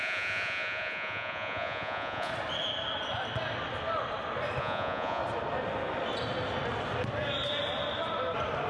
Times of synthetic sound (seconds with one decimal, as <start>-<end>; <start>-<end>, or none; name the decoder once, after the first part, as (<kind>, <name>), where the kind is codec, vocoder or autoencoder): 0.0-2.3 (vocoder, Vocos); 4.6-5.2